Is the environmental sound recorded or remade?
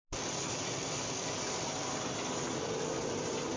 recorded